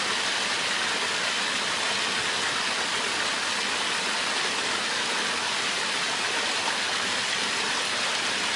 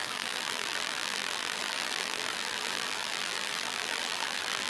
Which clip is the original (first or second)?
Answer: first